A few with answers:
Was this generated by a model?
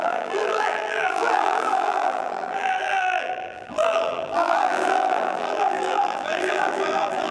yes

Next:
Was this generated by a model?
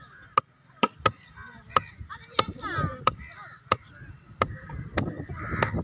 no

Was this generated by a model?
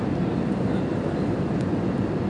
no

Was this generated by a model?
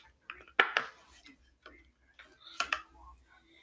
no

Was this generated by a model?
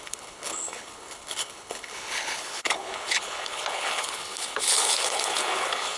yes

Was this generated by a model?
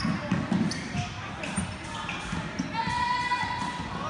no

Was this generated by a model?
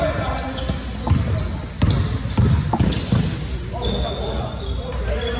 no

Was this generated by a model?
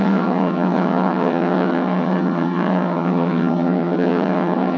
yes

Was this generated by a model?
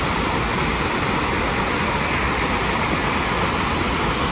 no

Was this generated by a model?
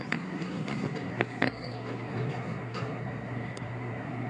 yes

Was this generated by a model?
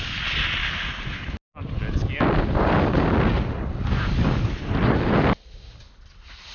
no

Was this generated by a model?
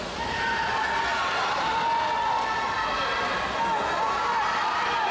no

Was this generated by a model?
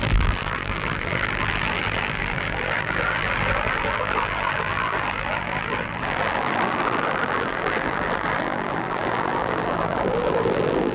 yes